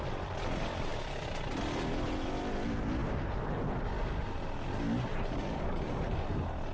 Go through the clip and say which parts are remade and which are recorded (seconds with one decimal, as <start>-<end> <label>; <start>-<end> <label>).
0.0-6.7 recorded